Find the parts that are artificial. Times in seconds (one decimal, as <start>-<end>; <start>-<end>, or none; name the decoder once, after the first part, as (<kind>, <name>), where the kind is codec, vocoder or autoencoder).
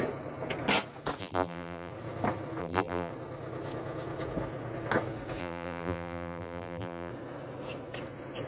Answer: 1.2-1.9 (vocoder, BigVGAN v2); 2.6-3.1; 5.4-7.1